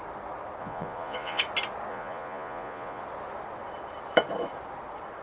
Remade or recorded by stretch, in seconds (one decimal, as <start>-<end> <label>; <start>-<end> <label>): 0.0-0.6 recorded; 0.6-1.4 remade; 1.4-1.9 recorded; 1.9-3.0 remade; 3.0-5.2 recorded